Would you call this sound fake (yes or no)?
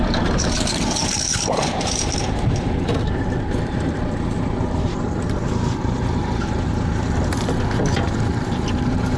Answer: yes